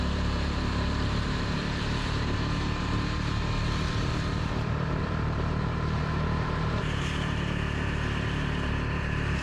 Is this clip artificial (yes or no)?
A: yes